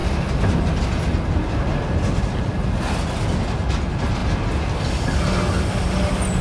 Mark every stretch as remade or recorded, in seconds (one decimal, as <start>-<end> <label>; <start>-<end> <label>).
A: 0.0-6.4 recorded